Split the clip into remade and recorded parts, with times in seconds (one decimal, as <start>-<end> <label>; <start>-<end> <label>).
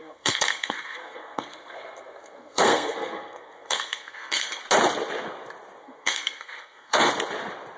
0.0-4.6 remade; 4.6-5.8 recorded; 5.8-7.1 remade; 7.1-7.8 recorded